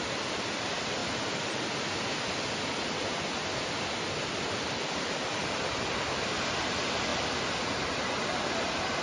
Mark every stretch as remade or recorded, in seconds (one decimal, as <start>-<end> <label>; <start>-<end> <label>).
0.0-1.0 remade; 1.0-4.3 recorded; 4.3-7.1 remade; 7.1-8.1 recorded; 8.1-9.0 remade